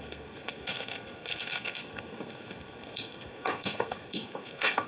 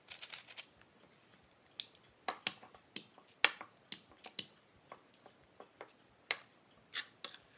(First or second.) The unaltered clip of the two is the second